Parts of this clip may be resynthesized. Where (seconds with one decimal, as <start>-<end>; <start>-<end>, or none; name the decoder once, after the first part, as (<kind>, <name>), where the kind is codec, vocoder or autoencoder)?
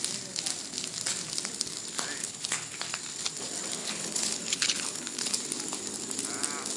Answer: 2.2-2.8 (codec, HILCodec); 3.8-5.4